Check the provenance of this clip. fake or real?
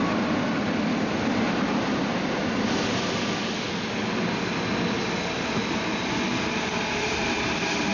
real